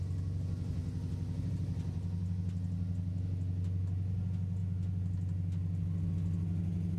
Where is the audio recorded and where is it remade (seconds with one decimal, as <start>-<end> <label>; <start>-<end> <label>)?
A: 0.0-7.0 recorded